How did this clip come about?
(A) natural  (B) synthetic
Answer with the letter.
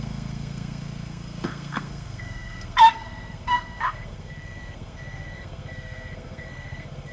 B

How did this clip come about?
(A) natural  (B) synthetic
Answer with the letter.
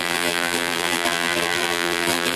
B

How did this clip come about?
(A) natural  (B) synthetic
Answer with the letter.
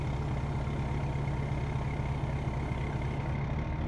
A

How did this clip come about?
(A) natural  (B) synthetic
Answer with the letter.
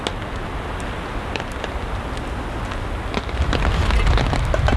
A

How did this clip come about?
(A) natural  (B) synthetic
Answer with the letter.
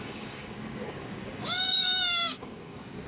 B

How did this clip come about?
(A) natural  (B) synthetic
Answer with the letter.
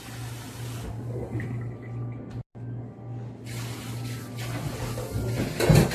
A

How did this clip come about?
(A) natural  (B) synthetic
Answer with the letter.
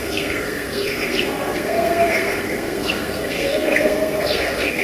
B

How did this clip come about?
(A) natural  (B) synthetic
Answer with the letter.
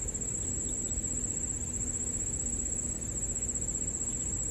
A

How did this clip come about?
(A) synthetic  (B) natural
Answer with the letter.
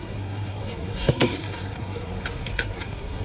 A